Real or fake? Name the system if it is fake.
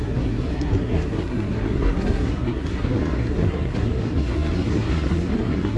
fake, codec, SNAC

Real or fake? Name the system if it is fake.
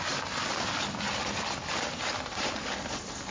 real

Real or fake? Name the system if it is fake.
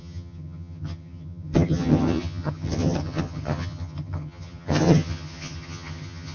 fake, vocoder, HiFi-GAN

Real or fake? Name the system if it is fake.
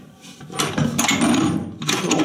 real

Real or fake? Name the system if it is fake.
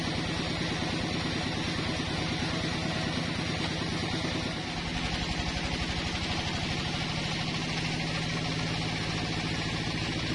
real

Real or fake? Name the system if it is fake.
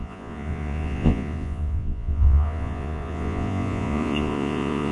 fake, vocoder, Vocos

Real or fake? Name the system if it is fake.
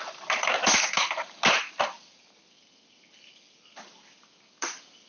real